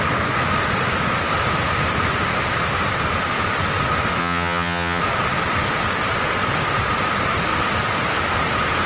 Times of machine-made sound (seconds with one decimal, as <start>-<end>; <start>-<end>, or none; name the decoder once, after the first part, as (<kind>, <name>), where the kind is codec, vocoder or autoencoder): 4.2-5.0 (vocoder, HiFi-GAN)